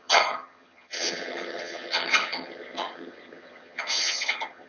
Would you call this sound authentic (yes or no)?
no